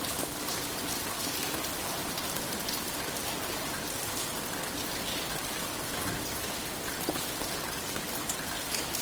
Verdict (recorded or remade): remade